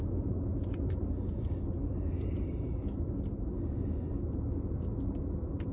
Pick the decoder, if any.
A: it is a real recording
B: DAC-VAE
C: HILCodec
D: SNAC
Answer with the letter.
A